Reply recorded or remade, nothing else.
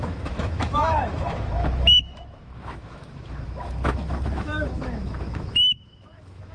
remade